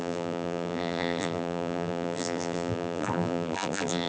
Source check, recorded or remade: remade